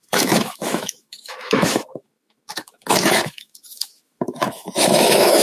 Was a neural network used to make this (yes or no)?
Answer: yes